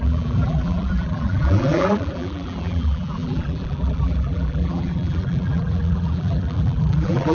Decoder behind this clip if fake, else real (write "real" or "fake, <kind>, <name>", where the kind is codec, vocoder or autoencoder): fake, vocoder, BigVGAN v2